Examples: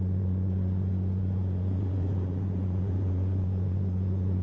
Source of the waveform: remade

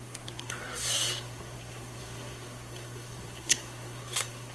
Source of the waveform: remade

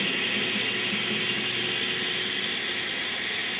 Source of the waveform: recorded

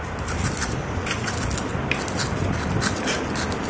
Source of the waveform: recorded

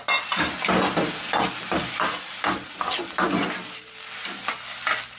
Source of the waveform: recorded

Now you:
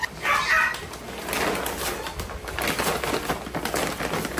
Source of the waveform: recorded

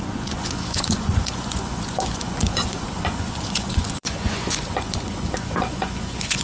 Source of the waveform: remade